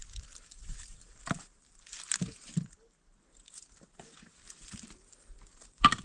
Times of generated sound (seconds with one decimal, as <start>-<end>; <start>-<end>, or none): 0.0-1.2

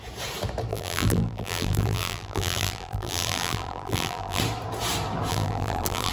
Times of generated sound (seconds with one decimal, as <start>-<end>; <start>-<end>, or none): 0.7-4.4; 5.3-6.1

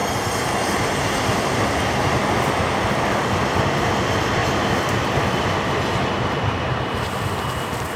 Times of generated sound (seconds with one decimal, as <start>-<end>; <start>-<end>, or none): 2.9-4.4; 6.2-8.0

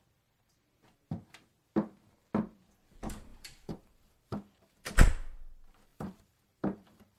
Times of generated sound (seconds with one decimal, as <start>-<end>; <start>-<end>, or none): 3.3-4.9; 5.9-7.2

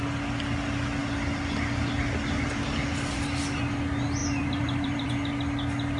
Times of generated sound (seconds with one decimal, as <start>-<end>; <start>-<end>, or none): 4.2-5.1

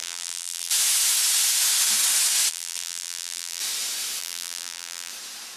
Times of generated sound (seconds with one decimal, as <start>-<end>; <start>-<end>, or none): 0.0-0.7; 2.5-3.6; 4.2-5.1

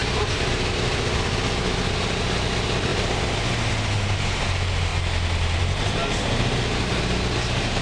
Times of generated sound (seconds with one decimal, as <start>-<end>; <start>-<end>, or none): 0.0-1.3; 6.0-7.0

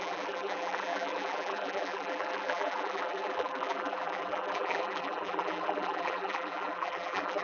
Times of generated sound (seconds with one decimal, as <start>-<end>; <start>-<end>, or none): 0.0-7.4